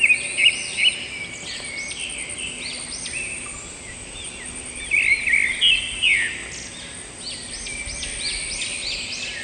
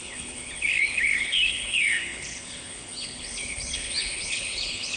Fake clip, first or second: second